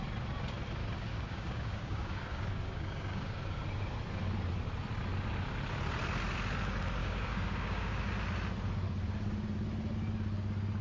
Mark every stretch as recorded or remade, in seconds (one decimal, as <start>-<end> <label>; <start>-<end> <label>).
0.0-0.8 recorded; 0.8-3.4 remade; 3.4-7.0 recorded; 7.0-8.1 remade; 8.1-10.8 recorded